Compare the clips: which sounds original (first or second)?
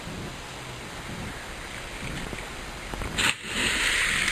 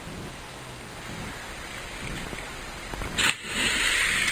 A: second